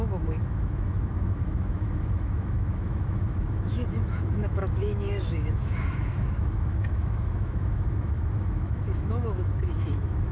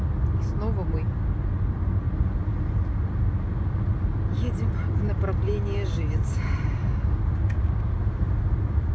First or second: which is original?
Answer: second